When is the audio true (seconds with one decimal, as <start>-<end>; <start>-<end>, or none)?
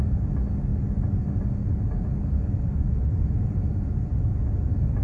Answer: 0.0-5.0